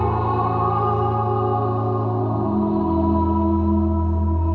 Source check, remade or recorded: recorded